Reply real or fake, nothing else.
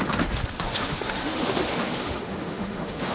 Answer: fake